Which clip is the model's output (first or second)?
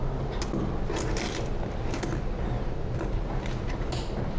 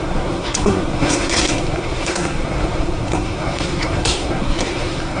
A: second